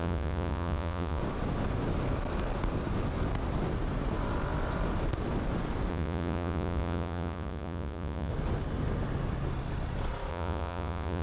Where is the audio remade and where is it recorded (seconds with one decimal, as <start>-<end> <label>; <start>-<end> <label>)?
0.0-1.2 remade; 1.2-5.9 recorded; 5.9-8.3 remade; 8.3-10.3 recorded; 10.3-11.2 remade